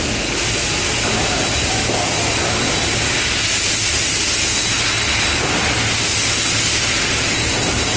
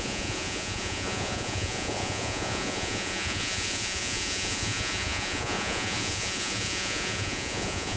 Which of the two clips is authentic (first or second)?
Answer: first